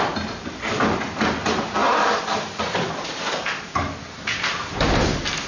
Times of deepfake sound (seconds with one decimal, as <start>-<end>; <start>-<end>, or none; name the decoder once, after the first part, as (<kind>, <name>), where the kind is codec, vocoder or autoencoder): none